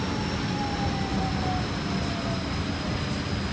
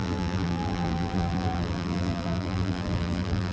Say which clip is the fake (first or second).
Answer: second